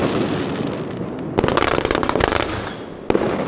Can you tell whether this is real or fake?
real